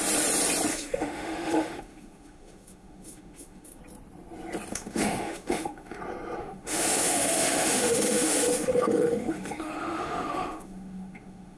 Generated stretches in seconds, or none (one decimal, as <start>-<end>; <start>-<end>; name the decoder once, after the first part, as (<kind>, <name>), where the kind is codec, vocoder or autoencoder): 0.7-3.8 (autoencoder, DAC-VAE); 4.7-6.0; 6.4-11.6